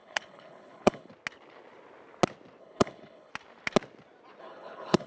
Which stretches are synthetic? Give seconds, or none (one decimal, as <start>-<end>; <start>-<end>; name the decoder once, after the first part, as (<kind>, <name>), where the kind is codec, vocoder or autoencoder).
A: 0.0-1.1 (codec, HILCodec); 2.6-3.3; 4.4-5.1